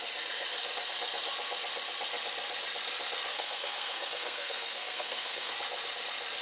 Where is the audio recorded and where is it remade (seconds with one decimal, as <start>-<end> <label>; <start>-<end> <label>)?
0.0-3.3 recorded; 3.3-5.5 remade; 5.5-6.4 recorded